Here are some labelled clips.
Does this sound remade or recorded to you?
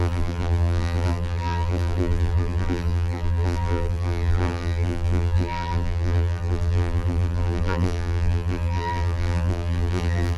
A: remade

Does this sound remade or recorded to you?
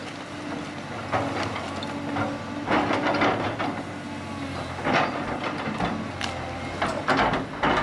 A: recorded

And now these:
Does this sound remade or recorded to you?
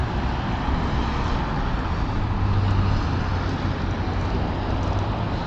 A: recorded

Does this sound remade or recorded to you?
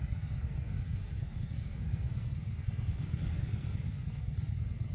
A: remade